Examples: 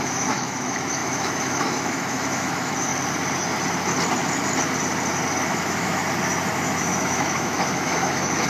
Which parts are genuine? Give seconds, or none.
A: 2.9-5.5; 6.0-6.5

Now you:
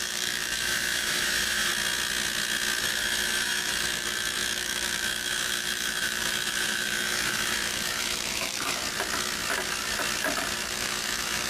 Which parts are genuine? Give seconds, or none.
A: 1.7-2.8; 8.8-10.7

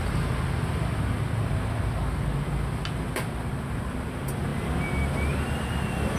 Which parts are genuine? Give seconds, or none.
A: 0.0-6.2

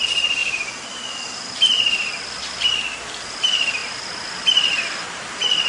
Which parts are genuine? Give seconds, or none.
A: 0.0-5.7

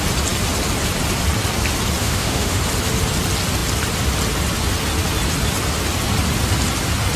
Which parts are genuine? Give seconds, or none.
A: 0.0-2.0; 2.6-7.2

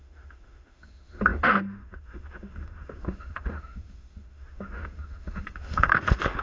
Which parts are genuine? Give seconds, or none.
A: none

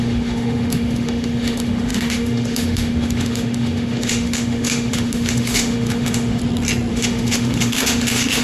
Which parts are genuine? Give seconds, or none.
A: 6.4-6.9

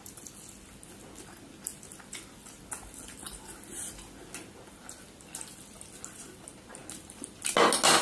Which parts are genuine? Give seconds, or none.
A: 0.0-8.0